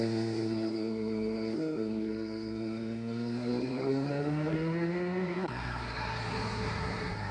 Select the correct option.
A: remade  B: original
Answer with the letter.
A